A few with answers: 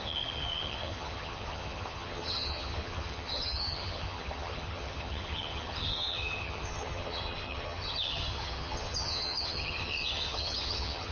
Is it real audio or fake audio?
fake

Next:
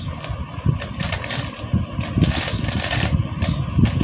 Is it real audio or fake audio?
real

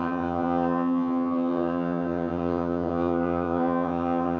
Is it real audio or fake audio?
fake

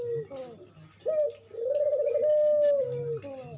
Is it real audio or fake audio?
real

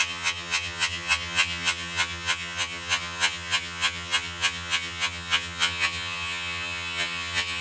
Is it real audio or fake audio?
fake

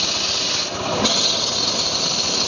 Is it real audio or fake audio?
real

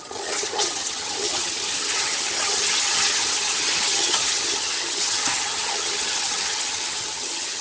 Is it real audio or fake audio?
fake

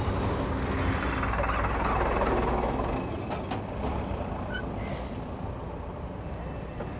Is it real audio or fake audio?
real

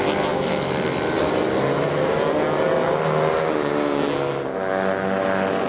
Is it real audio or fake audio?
real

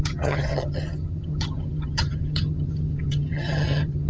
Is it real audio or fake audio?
fake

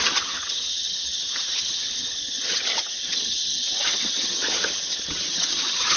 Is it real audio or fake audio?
fake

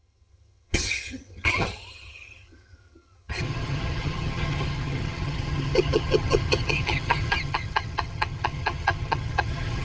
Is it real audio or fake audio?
fake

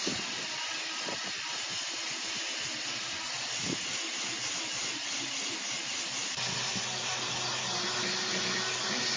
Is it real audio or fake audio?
real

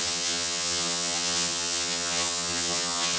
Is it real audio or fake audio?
fake